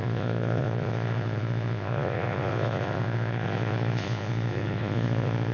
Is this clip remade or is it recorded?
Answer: remade